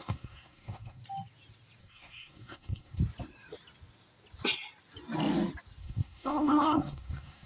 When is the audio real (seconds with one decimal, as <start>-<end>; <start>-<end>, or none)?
1.0-1.8; 3.0-5.8